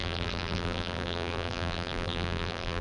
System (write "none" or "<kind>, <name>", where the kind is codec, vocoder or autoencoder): vocoder, BigVGAN v2